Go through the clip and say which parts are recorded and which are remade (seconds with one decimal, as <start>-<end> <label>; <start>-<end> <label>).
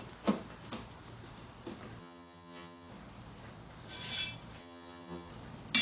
0.0-2.0 recorded; 2.0-2.9 remade; 2.9-4.6 recorded; 4.6-5.3 remade; 5.3-5.8 recorded